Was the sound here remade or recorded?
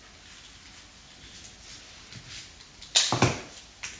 recorded